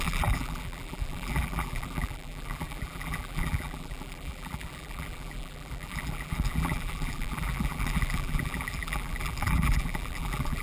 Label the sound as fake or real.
fake